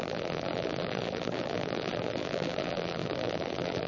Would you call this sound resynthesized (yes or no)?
yes